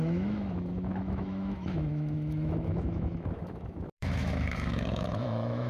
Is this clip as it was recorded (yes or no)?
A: no